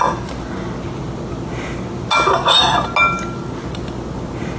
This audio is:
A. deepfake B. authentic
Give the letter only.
B